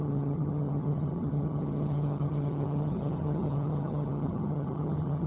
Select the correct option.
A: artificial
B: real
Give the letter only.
A